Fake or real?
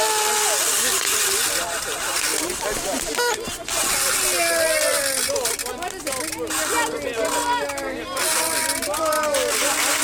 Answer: real